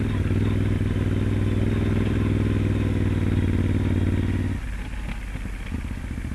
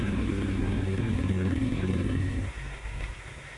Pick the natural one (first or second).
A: first